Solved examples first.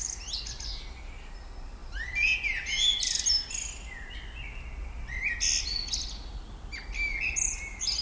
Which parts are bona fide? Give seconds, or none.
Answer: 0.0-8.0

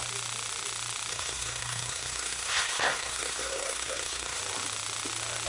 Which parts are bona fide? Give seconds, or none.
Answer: 0.0-1.1; 4.4-5.5

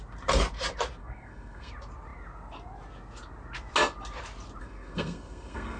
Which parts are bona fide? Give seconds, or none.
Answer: 0.0-1.0; 1.7-4.6